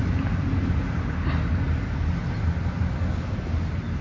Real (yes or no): yes